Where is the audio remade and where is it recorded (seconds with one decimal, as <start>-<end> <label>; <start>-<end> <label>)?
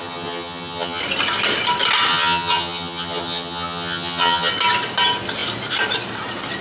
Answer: 0.0-1.0 remade; 1.0-2.1 recorded; 2.1-4.5 remade; 4.5-6.6 recorded